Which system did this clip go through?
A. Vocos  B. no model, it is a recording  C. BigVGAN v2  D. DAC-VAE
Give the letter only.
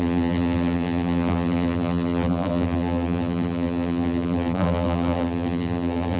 C